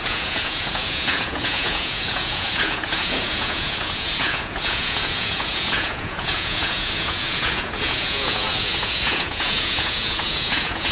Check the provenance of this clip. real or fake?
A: fake